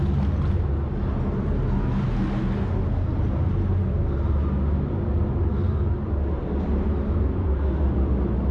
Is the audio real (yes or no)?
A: yes